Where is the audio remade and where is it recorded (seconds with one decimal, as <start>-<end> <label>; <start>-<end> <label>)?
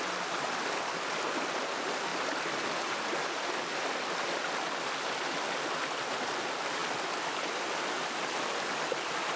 0.0-9.4 recorded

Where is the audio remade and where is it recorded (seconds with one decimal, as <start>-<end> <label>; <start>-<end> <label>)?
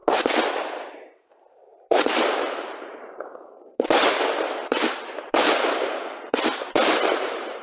0.0-0.6 recorded; 0.6-7.6 remade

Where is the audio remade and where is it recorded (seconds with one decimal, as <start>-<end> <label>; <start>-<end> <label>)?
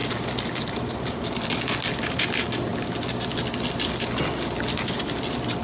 0.0-2.7 remade; 2.7-4.2 recorded; 4.2-5.6 remade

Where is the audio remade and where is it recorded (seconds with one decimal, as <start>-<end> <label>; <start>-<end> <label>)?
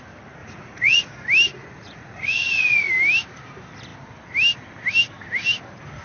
0.0-0.4 recorded; 0.4-1.1 remade; 1.1-1.5 recorded; 1.5-2.9 remade; 2.9-6.0 recorded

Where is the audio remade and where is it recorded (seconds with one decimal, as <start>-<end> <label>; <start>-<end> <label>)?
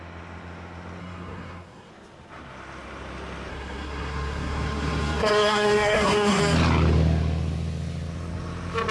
0.0-1.0 recorded; 1.0-1.9 remade; 1.9-3.5 recorded; 3.5-6.4 remade; 6.4-8.9 recorded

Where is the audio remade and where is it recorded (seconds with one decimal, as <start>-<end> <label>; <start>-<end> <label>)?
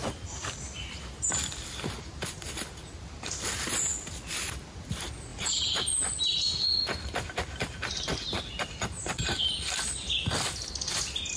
0.0-5.3 recorded; 5.3-5.9 remade; 5.9-11.4 recorded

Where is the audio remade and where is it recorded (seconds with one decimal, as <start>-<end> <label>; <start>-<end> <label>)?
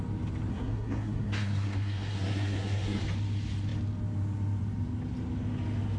0.0-0.5 recorded; 0.5-3.0 remade; 3.0-6.0 recorded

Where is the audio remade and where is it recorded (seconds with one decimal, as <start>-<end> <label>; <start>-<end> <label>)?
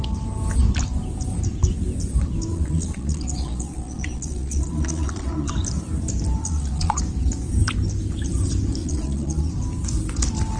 0.0-2.5 recorded; 2.5-5.5 remade; 5.5-6.4 recorded; 6.4-7.0 remade; 7.0-8.8 recorded; 8.8-9.5 remade; 9.5-10.6 recorded